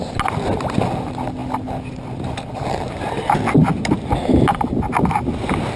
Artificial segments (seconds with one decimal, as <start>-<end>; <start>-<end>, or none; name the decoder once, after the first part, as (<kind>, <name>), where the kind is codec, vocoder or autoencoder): none